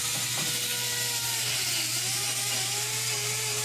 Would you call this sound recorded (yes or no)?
yes